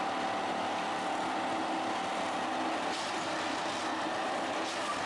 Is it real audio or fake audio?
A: real